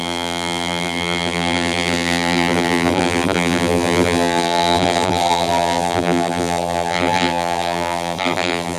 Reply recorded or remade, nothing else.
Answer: remade